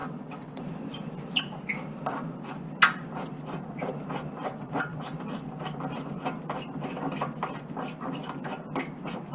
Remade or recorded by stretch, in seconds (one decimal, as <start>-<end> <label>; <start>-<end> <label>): 0.0-0.6 remade; 0.6-4.5 recorded; 4.5-5.0 remade; 5.0-9.3 recorded